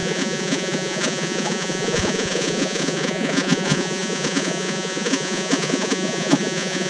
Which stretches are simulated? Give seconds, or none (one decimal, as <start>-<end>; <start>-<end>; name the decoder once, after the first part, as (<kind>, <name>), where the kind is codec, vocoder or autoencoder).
0.0-6.9 (vocoder, Vocos)